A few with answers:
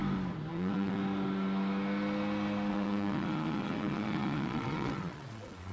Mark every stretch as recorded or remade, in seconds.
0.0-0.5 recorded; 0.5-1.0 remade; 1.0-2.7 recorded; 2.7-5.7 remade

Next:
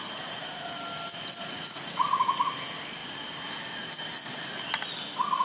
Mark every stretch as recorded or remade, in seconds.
0.0-1.4 recorded; 1.4-2.1 remade; 2.1-5.4 recorded

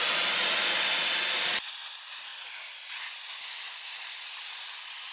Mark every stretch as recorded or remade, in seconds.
0.0-5.1 recorded